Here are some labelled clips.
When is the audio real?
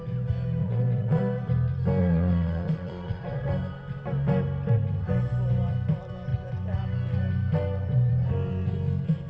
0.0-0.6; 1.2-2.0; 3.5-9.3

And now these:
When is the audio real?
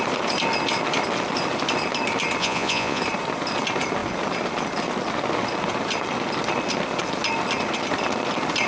0.0-2.4; 3.0-8.7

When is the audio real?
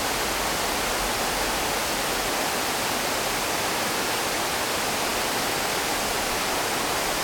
0.0-7.2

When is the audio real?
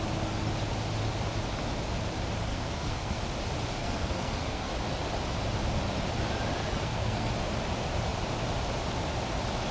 0.0-2.5; 3.2-3.8; 4.7-6.6; 7.3-9.7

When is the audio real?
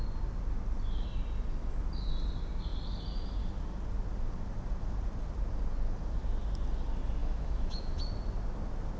0.0-7.2; 8.0-9.0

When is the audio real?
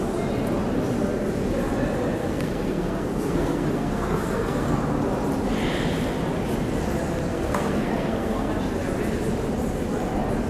0.0-2.2; 4.8-7.3; 8.5-10.5